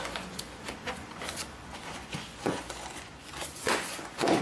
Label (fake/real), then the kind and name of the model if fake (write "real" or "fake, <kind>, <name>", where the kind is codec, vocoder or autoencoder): fake, vocoder, Vocos